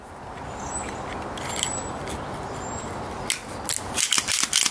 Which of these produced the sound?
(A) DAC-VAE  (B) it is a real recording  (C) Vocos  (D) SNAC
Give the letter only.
B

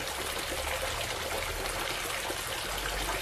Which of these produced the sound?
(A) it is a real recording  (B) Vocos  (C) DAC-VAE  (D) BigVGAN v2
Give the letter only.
A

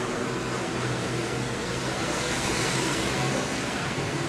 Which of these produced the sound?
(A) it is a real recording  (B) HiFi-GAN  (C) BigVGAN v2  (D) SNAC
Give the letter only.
D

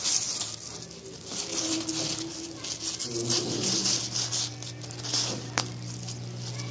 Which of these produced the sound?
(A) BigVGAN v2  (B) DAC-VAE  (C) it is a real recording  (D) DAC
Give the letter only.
C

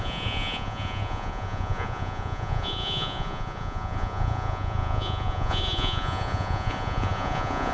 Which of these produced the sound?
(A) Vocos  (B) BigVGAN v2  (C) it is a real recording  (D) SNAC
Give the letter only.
A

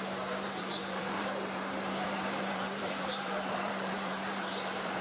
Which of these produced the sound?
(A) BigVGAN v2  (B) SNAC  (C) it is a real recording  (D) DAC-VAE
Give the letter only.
A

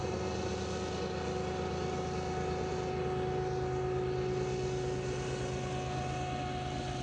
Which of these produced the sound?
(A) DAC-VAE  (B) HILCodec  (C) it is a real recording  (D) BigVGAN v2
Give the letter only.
C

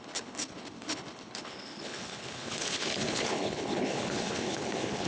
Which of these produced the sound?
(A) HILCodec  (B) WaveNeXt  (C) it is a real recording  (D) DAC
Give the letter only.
A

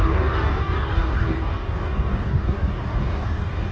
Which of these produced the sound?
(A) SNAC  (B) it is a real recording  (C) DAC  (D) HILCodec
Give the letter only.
C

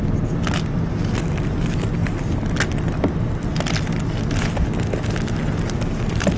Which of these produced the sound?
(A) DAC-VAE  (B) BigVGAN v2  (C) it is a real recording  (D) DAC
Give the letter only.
C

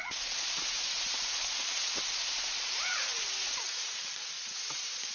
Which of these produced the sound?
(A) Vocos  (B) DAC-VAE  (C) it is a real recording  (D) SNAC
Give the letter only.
A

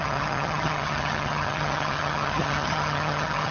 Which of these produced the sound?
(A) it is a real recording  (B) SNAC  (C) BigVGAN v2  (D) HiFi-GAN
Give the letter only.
D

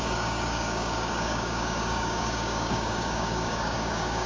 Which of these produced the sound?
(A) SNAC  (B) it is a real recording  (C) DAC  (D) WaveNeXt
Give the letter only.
C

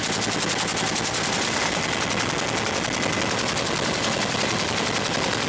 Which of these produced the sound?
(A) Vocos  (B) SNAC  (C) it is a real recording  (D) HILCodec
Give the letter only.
C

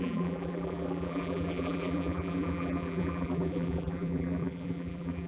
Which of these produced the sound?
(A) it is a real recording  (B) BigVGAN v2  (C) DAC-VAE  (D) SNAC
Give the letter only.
B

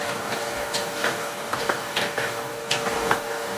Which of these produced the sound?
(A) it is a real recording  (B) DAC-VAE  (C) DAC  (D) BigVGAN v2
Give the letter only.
C